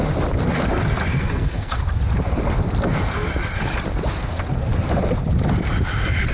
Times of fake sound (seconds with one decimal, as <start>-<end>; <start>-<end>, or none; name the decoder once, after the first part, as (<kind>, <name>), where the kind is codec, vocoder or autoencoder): 1.1-1.8 (codec, SNAC)